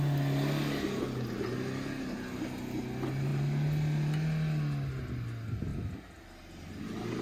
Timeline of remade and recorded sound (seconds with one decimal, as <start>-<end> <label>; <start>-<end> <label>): 0.0-7.2 recorded